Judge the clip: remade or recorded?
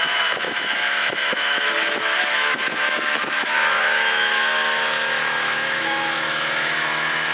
remade